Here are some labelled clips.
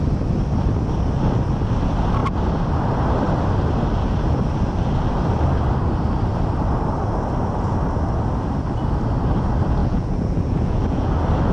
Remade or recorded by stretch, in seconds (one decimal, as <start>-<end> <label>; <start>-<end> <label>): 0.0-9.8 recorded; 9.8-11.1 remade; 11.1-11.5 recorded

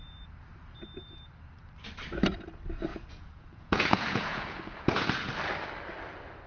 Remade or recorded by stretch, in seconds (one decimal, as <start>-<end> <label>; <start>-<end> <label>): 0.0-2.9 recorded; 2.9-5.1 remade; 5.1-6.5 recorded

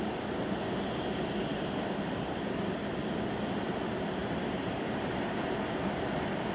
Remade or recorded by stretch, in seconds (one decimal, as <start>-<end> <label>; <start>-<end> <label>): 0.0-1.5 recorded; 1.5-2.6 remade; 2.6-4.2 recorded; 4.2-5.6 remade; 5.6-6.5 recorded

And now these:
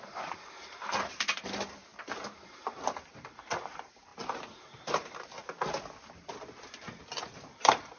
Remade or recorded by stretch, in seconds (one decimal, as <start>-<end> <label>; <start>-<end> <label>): 0.0-4.1 remade; 4.1-4.6 recorded; 4.6-5.4 remade; 5.4-7.0 recorded; 7.0-8.0 remade

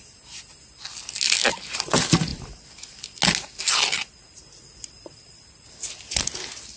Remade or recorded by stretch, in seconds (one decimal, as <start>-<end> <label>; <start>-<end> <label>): 0.0-6.8 recorded